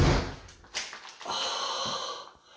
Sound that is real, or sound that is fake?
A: real